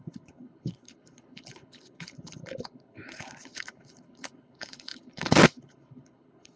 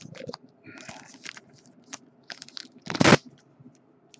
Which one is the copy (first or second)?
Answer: first